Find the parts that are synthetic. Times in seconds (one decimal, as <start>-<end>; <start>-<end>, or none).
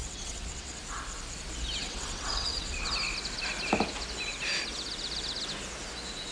0.0-0.8; 1.8-2.9